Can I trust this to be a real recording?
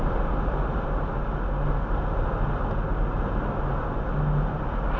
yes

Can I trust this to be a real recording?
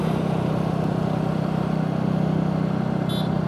yes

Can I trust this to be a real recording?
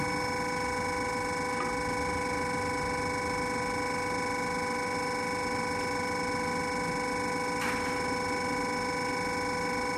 yes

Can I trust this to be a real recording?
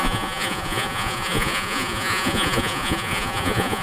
no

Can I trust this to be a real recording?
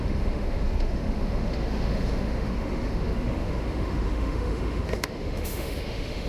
no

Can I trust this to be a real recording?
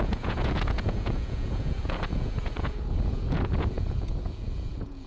no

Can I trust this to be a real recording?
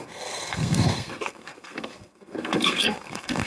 no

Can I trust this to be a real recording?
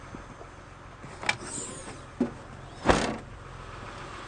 yes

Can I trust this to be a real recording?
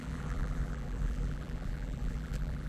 no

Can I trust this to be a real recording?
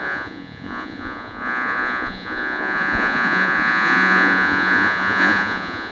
no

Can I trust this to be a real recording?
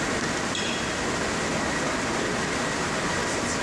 yes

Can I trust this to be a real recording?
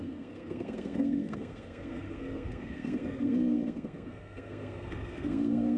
no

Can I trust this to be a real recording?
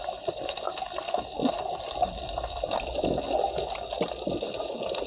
yes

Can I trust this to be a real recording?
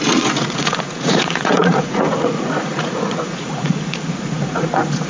no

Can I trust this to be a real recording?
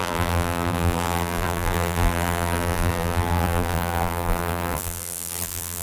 no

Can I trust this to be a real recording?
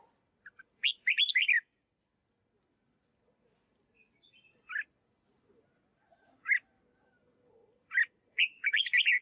yes